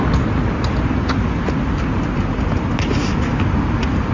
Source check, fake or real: real